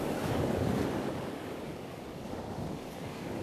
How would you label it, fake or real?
fake